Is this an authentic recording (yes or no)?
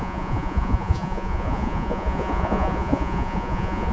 no